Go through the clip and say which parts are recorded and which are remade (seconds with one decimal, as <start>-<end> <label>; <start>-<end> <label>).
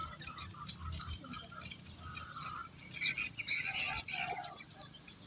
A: 0.0-5.3 recorded